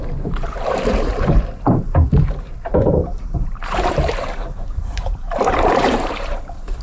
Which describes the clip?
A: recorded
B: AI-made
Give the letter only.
B